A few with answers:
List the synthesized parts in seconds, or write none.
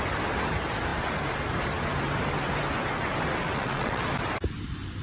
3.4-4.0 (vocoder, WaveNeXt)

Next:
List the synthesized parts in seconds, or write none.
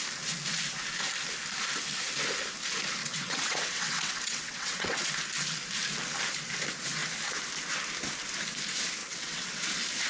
3.0-5.1 (vocoder, WaveNeXt); 9.0-9.6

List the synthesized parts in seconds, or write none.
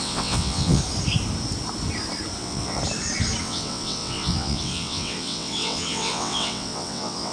0.0-0.8 (vocoder, WaveNeXt); 2.4-2.8; 3.4-7.3